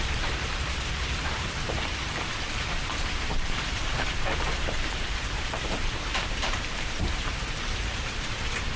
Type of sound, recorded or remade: remade